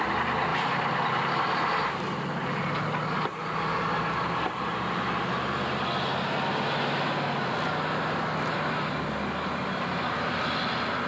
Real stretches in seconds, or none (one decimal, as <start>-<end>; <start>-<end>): 0.0-0.5; 1.4-11.1